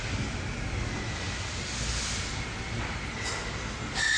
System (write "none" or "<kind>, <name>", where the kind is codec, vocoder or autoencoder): none